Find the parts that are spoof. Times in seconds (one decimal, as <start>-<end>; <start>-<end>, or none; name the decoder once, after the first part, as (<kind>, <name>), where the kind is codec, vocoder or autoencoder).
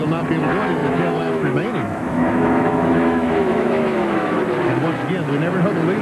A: 0.8-4.4 (autoencoder, DAC-VAE)